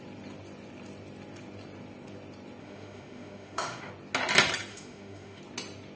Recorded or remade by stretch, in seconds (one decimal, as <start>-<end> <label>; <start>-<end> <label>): 0.0-2.6 recorded; 2.6-3.9 remade; 3.9-4.7 recorded; 4.7-5.4 remade; 5.4-6.0 recorded